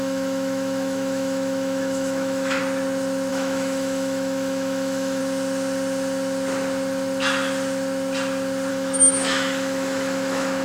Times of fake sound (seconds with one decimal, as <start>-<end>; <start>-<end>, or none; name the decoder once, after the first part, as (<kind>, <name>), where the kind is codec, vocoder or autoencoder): 0.0-2.6 (autoencoder, DAC-VAE); 3.3-5.2; 8.7-10.6